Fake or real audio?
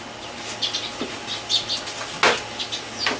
real